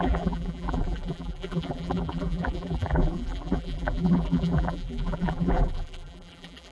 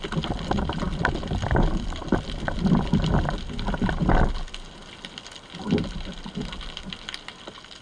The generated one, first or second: first